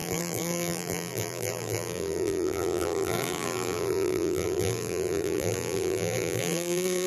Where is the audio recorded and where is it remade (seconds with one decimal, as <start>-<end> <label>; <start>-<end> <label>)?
0.0-7.1 remade